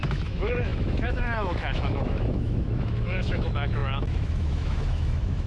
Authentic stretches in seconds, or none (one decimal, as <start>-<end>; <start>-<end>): none